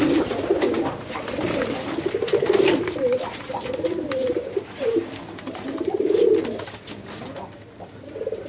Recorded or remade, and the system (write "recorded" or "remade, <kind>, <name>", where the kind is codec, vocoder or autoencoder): remade, vocoder, BigVGAN v2